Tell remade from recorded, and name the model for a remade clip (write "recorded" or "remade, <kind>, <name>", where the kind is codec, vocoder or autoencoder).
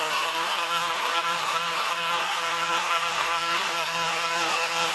remade, codec, SNAC